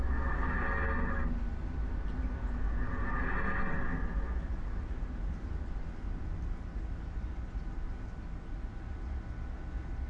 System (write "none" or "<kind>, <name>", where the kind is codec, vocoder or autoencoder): none